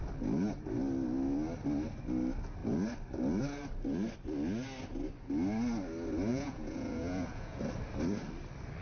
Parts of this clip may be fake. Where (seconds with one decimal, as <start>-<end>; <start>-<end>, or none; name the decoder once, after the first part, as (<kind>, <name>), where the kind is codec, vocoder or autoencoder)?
6.3-7.6 (vocoder, Vocos)